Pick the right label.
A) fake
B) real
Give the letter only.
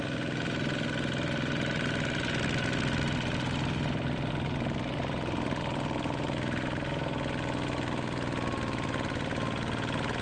B